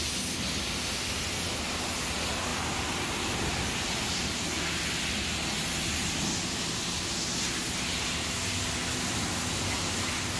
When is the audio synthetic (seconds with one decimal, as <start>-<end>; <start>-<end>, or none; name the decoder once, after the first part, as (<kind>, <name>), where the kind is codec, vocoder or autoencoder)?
none